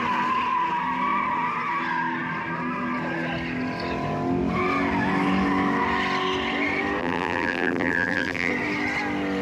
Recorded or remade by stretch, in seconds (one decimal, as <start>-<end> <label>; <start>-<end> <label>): 0.0-7.0 recorded; 7.0-8.5 remade; 8.5-9.4 recorded